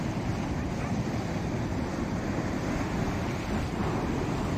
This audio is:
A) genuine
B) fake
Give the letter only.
A